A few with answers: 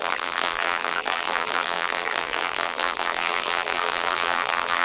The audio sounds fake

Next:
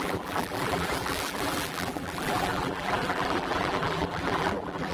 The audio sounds fake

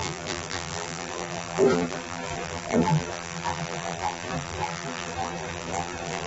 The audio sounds fake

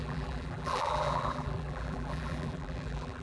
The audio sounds fake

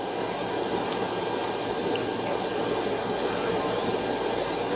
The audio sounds real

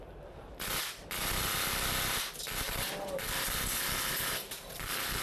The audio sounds fake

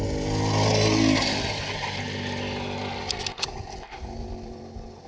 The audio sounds real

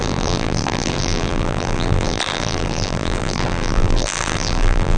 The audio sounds fake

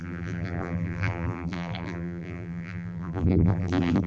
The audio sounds fake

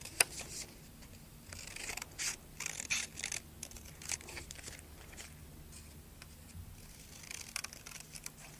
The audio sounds real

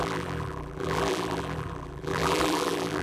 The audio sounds fake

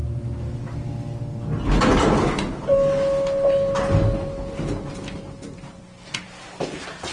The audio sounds real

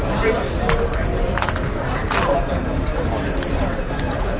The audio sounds fake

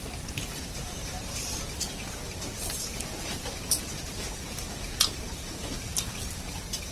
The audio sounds fake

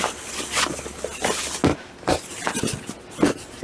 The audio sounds real